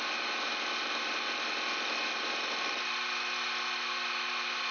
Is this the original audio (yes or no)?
yes